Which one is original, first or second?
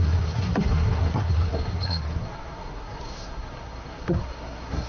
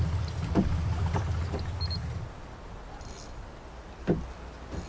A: second